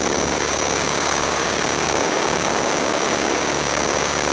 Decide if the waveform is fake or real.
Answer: fake